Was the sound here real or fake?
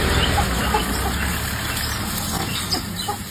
real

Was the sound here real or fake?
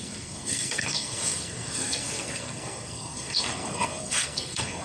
fake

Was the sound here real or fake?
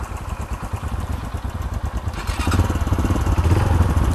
real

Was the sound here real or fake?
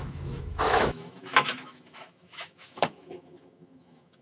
fake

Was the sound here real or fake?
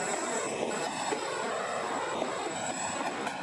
real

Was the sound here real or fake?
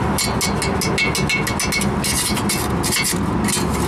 real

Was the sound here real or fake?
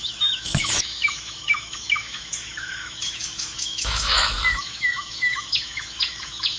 fake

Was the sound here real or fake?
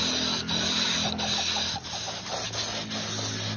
real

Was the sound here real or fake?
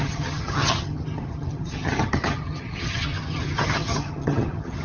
fake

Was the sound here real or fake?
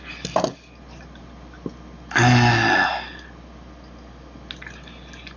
real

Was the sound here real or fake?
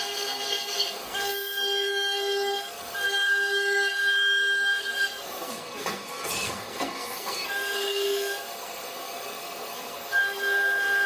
fake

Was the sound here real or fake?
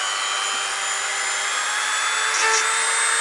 real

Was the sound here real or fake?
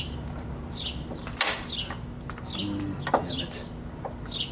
real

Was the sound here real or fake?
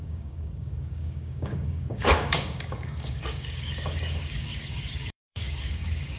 fake